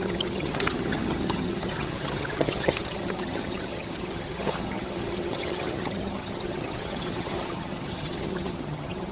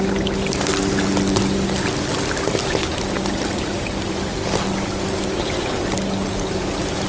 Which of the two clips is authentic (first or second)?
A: second